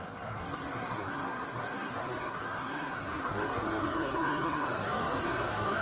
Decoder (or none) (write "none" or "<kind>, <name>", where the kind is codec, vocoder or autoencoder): codec, SNAC